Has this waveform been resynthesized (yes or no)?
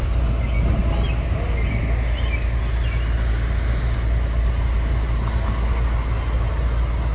no